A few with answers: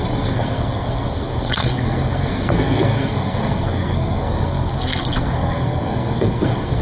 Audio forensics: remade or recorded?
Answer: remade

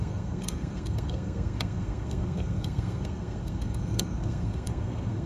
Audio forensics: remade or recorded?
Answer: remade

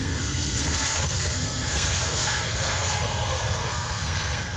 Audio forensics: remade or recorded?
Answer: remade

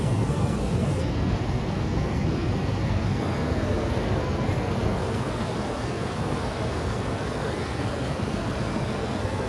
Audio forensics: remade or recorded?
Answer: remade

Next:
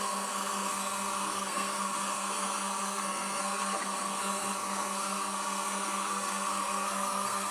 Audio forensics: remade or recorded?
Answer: remade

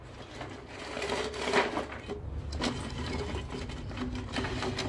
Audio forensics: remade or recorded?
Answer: recorded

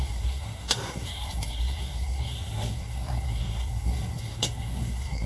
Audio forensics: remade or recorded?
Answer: remade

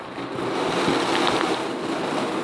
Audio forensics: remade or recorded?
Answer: recorded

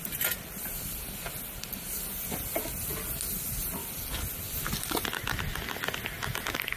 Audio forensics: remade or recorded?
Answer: recorded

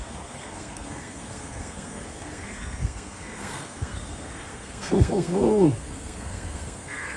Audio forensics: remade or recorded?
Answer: remade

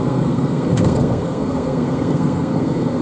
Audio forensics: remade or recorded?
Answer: remade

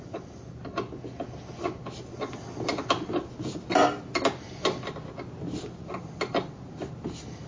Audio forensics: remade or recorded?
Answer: recorded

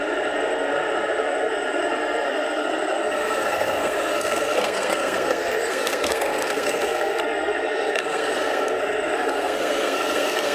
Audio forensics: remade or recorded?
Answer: remade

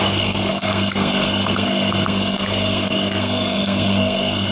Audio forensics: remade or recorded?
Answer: remade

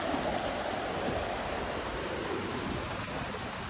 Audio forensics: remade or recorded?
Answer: recorded